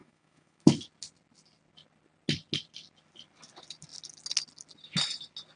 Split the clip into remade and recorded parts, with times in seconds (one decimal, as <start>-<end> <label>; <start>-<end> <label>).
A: 0.0-0.7 remade; 0.7-5.6 recorded